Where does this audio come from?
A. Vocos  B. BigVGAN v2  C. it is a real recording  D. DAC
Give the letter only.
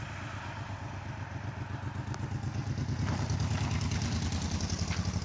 C